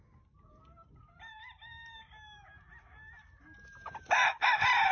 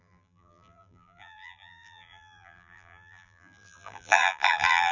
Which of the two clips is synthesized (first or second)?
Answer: second